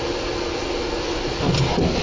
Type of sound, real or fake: real